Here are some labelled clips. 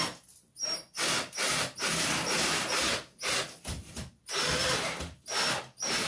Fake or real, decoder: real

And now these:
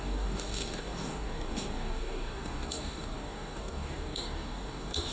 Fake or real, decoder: fake, codec, DAC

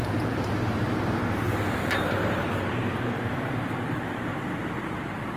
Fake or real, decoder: fake, vocoder, BigVGAN v2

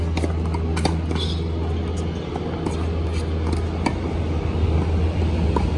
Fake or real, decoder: real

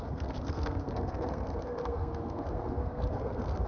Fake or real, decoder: fake, codec, SNAC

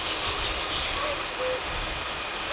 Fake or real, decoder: real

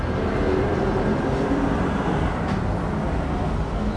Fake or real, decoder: real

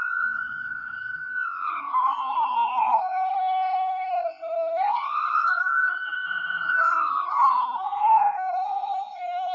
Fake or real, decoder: fake, codec, SNAC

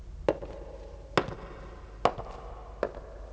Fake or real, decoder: real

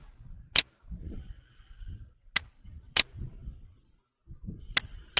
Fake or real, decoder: real